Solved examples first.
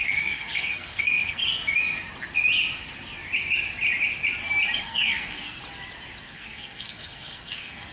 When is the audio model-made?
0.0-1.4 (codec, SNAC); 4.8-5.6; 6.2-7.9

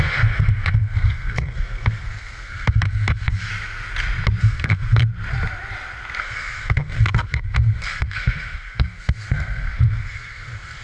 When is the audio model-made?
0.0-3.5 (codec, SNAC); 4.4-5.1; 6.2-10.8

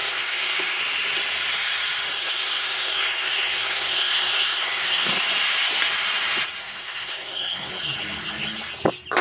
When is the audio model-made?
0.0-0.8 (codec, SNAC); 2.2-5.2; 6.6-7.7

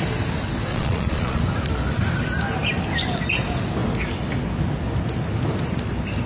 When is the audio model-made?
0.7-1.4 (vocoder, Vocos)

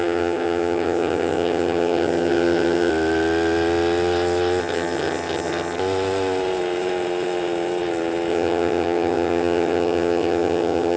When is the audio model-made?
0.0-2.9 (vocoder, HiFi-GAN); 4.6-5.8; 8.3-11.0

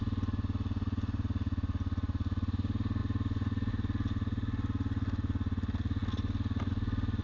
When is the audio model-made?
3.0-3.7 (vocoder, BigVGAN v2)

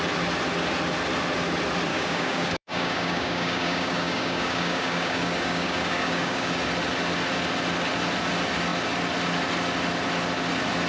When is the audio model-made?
1.9-6.5 (codec, DAC)